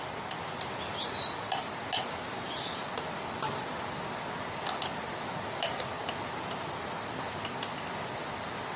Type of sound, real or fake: real